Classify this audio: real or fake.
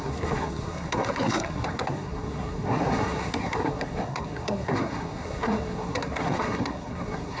fake